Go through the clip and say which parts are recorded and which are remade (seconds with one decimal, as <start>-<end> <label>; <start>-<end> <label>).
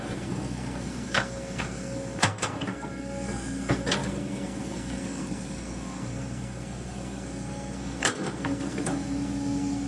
0.0-9.9 remade